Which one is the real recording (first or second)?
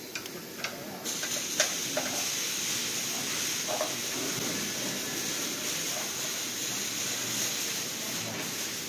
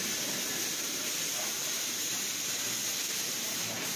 first